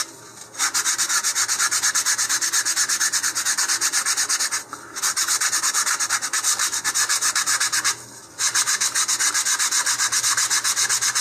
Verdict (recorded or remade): recorded